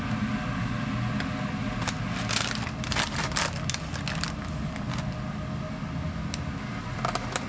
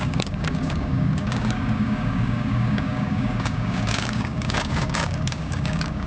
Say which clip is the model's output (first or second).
second